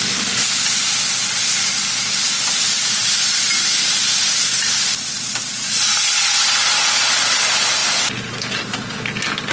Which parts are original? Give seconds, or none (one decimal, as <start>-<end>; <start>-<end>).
0.0-9.5